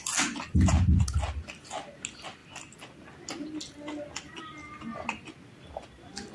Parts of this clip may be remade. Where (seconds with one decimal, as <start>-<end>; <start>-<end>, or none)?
none